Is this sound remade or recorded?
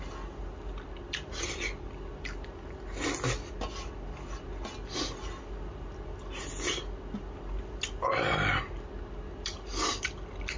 recorded